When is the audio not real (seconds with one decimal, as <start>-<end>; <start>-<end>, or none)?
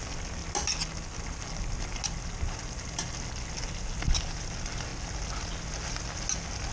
none